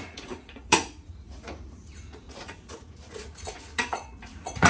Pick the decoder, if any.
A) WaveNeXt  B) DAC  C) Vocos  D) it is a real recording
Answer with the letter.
C